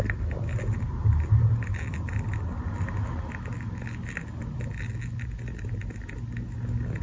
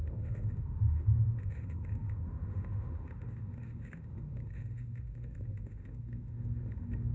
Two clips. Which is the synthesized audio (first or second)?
second